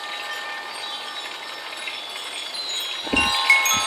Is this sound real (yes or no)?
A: yes